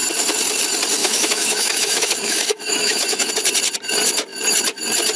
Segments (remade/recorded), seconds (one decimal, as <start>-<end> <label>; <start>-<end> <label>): 0.0-1.0 recorded; 1.0-3.3 remade; 3.3-5.2 recorded